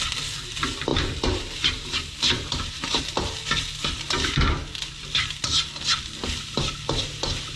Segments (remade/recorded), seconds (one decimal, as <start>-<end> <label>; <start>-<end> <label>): 0.0-0.9 recorded; 0.9-3.0 remade; 3.0-7.6 recorded